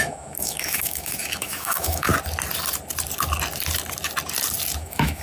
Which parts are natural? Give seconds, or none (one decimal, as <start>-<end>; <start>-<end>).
2.1-4.8